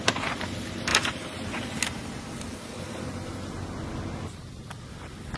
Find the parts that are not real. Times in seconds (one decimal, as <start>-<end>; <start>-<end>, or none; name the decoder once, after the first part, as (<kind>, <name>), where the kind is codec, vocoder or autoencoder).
none